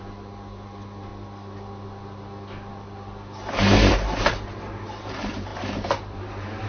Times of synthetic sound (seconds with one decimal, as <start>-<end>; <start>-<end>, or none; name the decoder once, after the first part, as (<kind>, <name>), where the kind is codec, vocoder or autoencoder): 0.0-1.1 (vocoder, BigVGAN v2); 4.2-6.7